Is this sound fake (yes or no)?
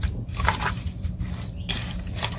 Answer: yes